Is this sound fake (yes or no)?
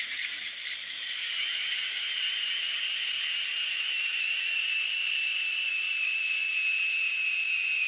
yes